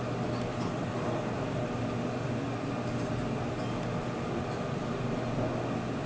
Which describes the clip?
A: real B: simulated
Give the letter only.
A